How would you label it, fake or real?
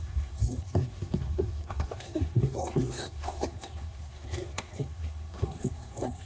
fake